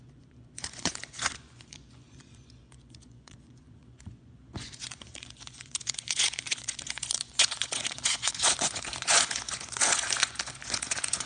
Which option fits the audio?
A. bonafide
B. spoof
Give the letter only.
B